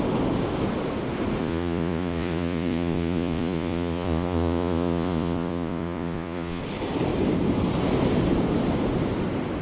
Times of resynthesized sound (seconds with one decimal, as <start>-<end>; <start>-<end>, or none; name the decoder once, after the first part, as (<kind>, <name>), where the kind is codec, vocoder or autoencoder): 1.4-6.6 (vocoder, Vocos)